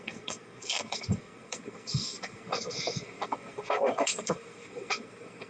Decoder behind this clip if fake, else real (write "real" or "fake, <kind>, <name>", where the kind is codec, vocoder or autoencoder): fake, codec, SNAC